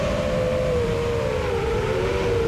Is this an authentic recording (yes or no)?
yes